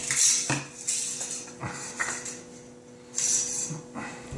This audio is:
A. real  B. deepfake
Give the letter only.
A